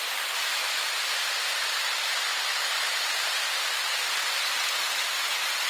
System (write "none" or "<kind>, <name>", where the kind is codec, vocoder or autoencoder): none